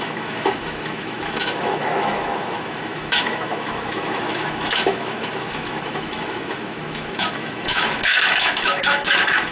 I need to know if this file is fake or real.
fake